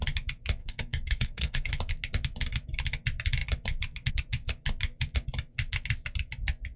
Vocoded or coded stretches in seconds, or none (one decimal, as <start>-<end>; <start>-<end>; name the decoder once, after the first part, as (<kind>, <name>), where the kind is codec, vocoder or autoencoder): 0.6-1.7 (codec, SNAC)